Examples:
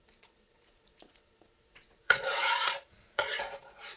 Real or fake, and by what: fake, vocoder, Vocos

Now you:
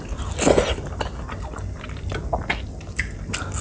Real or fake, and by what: real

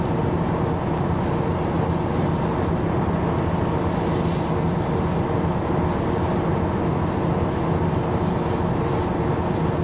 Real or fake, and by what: real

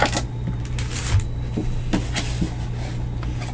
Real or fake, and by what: real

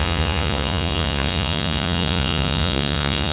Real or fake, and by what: fake, vocoder, Vocos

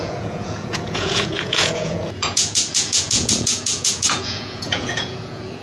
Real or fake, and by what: fake, vocoder, Vocos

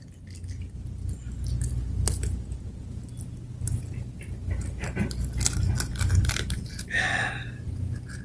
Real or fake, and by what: real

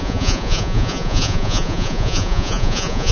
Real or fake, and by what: fake, vocoder, Vocos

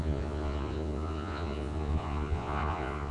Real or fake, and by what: fake, vocoder, Vocos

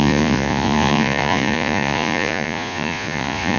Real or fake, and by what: fake, vocoder, Vocos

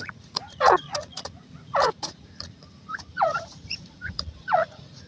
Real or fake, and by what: fake, vocoder, Vocos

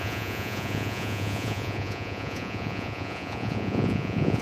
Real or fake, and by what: fake, vocoder, Vocos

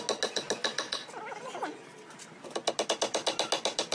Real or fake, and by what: real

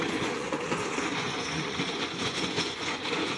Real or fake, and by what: fake, vocoder, Vocos